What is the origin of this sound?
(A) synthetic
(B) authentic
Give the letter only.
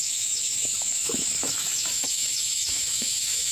A